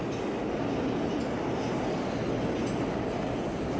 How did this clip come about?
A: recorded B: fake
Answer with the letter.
A